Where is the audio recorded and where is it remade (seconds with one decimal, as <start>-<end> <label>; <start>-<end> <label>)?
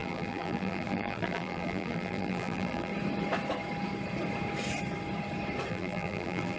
0.0-2.9 remade; 2.9-5.7 recorded; 5.7-6.6 remade